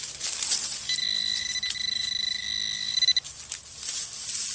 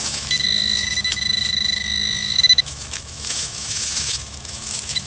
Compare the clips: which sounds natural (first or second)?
first